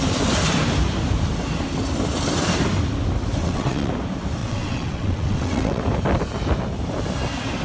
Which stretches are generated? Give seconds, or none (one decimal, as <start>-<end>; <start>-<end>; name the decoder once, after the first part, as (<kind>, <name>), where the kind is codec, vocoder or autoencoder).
3.4-3.9 (vocoder, WaveNeXt); 4.4-5.8